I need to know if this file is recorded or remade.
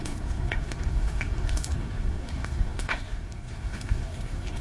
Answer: remade